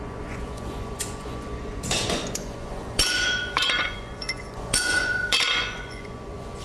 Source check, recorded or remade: remade